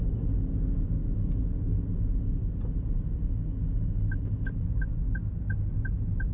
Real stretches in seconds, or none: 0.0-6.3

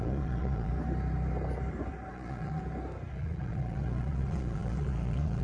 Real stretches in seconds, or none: 0.7-2.1; 2.6-3.1